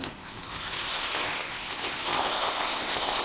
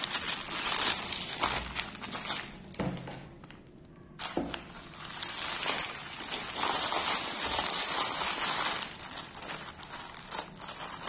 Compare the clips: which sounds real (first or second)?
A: second